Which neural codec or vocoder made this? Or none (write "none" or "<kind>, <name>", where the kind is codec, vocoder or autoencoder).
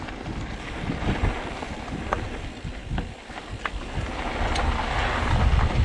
none